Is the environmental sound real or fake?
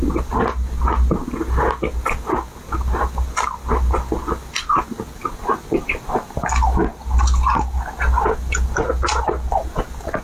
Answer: real